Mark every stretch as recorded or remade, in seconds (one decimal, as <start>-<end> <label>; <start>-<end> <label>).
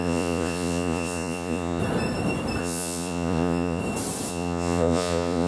0.0-1.8 remade; 1.8-2.6 recorded; 2.6-3.8 remade; 3.8-4.3 recorded; 4.3-5.5 remade